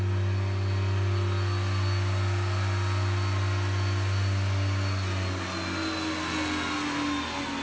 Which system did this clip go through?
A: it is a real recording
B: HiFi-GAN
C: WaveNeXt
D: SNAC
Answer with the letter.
A